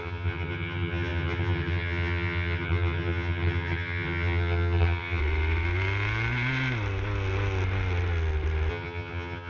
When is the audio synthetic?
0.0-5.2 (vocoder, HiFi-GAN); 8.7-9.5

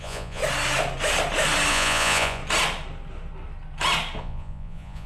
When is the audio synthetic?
0.0-0.4 (vocoder, Vocos); 1.7-2.4; 4.2-5.1

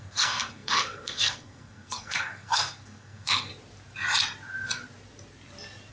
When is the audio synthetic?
0.0-3.5 (codec, SNAC)

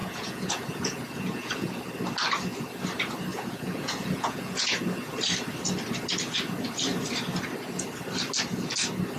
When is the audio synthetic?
0.0-1.8 (vocoder, Vocos); 3.3-4.8

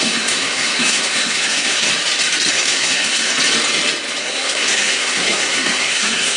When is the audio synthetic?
0.0-1.9 (codec, SNAC); 2.5-3.3; 4.2-6.4

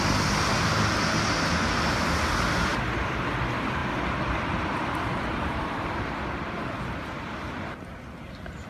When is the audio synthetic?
2.7-3.3 (vocoder, BigVGAN v2); 3.8-7.7

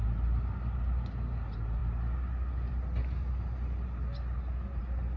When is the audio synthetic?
none